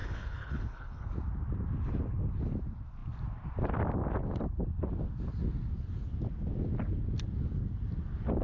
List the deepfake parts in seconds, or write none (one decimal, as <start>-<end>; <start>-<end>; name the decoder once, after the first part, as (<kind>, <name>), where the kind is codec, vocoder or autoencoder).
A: 0.0-1.1 (codec, HILCodec)